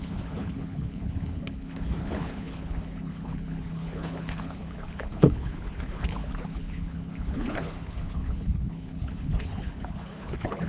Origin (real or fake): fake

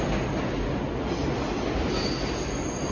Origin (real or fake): real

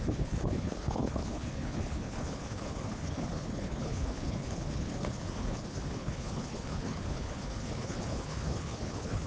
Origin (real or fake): fake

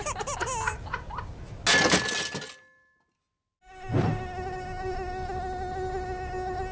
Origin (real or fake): real